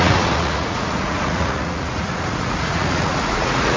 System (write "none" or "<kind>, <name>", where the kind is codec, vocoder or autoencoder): vocoder, Vocos